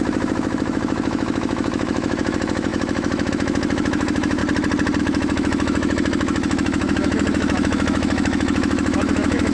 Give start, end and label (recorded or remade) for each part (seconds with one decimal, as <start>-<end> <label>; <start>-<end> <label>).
0.0-4.4 remade; 4.4-5.0 recorded; 5.0-9.5 remade